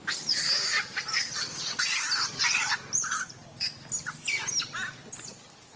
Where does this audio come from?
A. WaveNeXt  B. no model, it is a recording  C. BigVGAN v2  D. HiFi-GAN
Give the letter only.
B